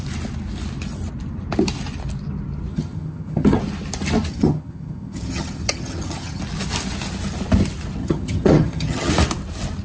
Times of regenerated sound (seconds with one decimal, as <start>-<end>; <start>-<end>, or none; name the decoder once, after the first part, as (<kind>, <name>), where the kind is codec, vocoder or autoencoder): 2.7-3.6 (vocoder, HiFi-GAN); 4.3-6.4; 8.0-9.1